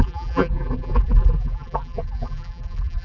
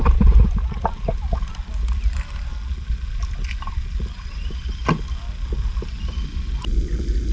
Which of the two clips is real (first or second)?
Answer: second